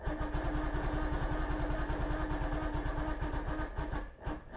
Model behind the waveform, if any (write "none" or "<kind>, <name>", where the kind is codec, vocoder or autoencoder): none